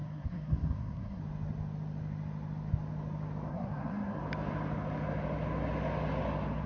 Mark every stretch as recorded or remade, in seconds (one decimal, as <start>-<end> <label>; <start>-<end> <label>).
0.0-1.2 remade; 1.2-3.5 recorded; 3.5-4.2 remade; 4.2-6.7 recorded